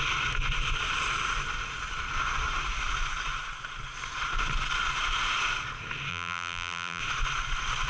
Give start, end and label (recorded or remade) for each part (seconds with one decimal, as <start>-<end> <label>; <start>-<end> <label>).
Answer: 0.0-6.1 recorded; 6.1-7.0 remade; 7.0-7.9 recorded